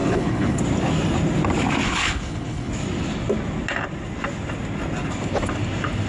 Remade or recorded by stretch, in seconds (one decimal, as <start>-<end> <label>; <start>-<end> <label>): 0.0-0.6 remade; 0.6-1.8 recorded; 1.8-2.7 remade; 2.7-6.1 recorded